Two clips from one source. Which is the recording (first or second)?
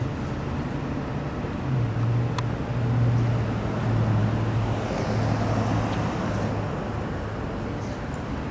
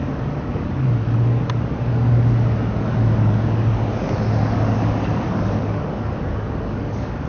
first